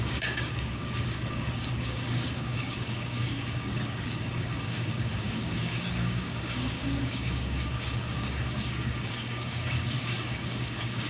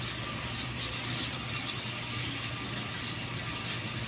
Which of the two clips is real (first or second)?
second